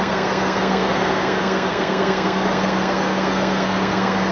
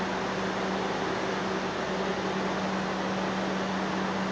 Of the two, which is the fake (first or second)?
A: first